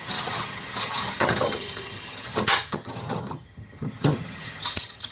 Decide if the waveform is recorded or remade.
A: remade